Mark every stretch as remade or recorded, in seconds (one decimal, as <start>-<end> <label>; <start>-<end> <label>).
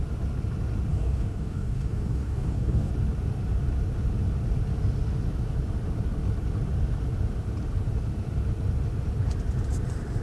0.0-0.9 recorded; 0.9-2.9 remade; 2.9-10.2 recorded